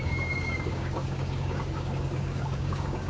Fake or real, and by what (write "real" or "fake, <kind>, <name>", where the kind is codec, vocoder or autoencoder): fake, codec, DAC